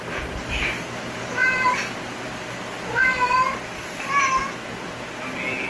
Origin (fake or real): real